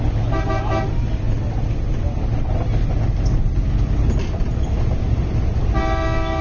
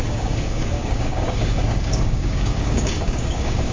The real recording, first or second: first